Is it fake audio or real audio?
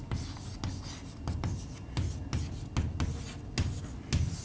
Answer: real